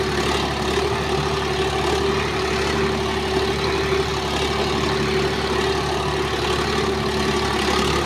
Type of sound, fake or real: real